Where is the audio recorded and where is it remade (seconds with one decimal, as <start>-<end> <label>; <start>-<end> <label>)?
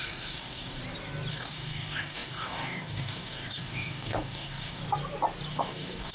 0.0-0.8 remade; 0.8-1.3 recorded; 1.3-4.8 remade; 4.8-5.5 recorded; 5.5-6.1 remade